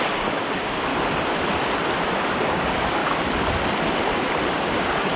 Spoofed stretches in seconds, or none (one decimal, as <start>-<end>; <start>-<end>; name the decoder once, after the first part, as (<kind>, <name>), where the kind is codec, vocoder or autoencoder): 0.0-0.9 (codec, DAC); 2.3-3.0; 4.5-5.2